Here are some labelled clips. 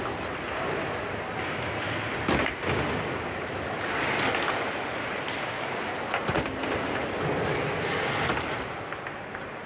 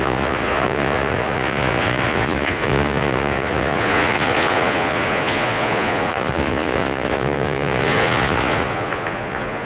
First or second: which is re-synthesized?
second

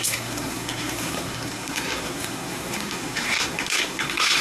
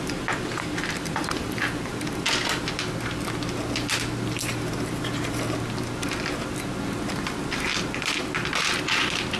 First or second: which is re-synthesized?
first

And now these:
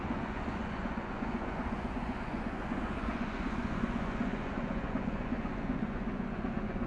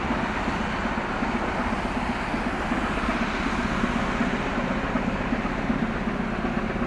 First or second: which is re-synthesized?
first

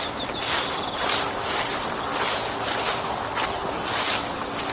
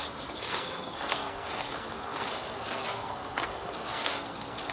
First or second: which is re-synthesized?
second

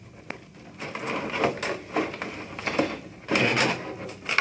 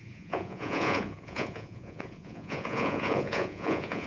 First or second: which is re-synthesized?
second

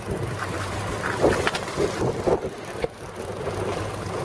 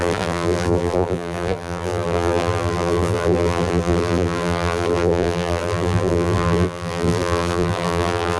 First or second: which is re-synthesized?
second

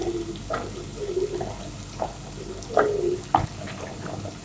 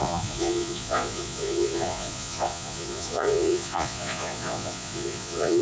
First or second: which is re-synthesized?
second